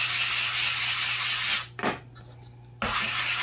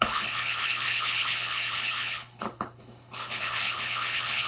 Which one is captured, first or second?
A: first